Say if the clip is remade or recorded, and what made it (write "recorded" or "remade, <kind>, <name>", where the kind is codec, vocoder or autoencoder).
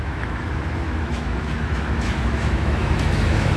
remade, autoencoder, DAC-VAE